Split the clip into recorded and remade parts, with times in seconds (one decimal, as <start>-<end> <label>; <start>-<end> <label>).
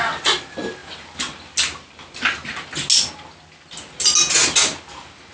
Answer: 0.0-5.3 recorded